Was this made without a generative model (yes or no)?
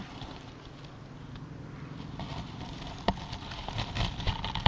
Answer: yes